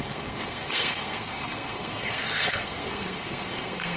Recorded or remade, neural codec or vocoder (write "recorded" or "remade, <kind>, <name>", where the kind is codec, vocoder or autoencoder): remade, codec, SNAC